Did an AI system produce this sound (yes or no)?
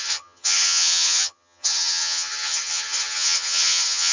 yes